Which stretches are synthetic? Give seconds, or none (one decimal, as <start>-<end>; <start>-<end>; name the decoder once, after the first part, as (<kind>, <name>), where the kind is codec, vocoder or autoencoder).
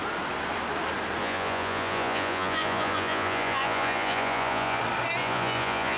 1.2-4.8 (vocoder, Vocos); 5.2-6.0